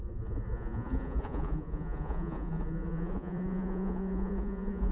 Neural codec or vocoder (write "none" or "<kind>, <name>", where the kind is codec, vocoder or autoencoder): vocoder, Vocos